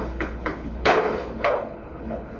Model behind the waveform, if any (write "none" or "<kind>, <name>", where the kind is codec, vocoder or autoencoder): codec, HILCodec